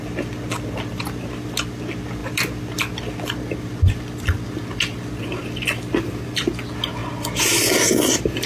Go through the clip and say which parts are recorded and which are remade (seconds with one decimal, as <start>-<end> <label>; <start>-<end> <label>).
0.0-8.5 recorded